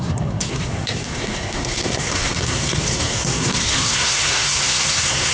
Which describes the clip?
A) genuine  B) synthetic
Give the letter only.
B